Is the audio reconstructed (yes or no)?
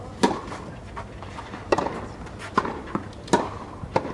no